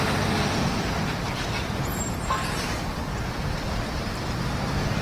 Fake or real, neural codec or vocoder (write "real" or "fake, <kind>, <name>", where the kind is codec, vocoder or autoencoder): real